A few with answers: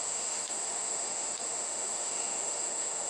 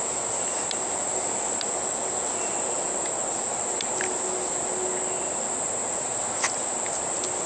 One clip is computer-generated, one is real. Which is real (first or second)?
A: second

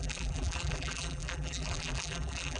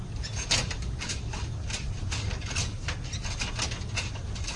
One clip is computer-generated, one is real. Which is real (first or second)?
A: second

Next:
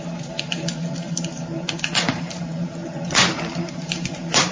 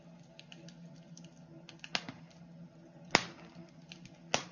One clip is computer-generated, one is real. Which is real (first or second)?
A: second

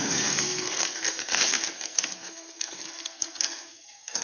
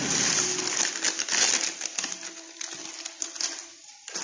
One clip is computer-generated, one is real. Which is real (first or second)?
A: second